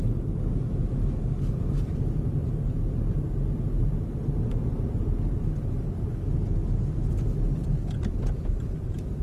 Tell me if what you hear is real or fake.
real